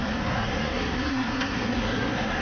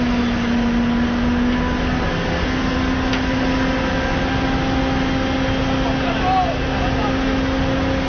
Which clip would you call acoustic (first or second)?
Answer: second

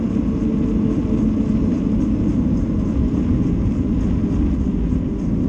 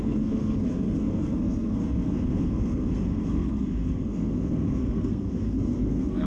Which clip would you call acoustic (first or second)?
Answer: first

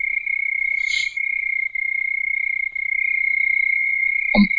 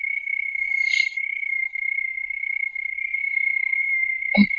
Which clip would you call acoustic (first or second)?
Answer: first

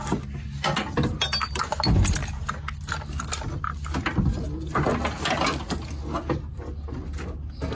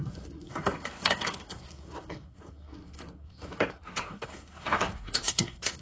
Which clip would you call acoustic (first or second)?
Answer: first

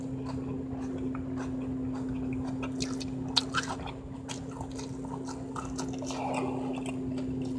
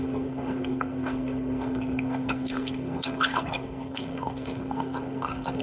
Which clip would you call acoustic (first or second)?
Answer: first